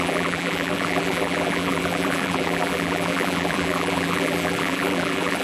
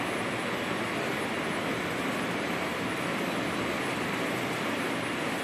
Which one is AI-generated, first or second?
first